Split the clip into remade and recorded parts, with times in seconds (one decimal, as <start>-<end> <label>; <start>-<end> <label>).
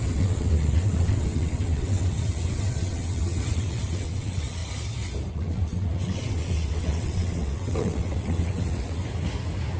0.0-4.6 remade; 4.6-5.3 recorded; 5.3-9.0 remade; 9.0-9.8 recorded